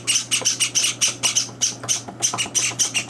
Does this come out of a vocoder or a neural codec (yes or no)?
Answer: no